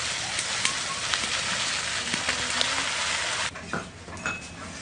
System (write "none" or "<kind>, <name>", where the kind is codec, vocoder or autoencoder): none